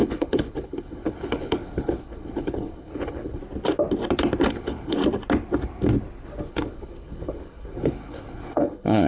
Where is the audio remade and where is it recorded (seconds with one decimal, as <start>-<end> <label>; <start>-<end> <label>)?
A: 0.0-3.4 remade; 3.4-4.5 recorded; 4.5-5.0 remade; 5.0-6.4 recorded; 6.4-9.1 remade